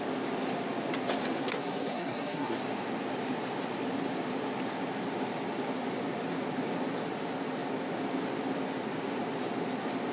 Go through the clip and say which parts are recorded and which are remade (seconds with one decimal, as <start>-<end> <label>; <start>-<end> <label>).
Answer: 0.0-1.4 recorded; 1.4-2.6 remade; 2.6-10.1 recorded